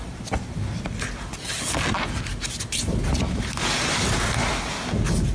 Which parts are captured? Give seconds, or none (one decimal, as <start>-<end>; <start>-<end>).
0.0-5.3